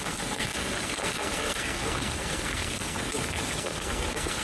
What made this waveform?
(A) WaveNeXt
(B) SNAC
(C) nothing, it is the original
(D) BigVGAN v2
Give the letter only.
B